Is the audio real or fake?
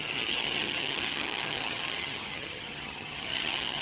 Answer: fake